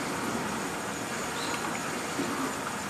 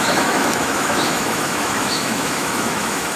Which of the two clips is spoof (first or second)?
second